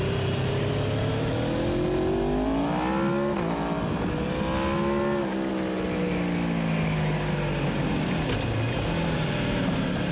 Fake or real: real